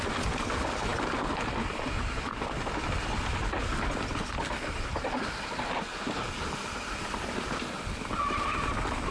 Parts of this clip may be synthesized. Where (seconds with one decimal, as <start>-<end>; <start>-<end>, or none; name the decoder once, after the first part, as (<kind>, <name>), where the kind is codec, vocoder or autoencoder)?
none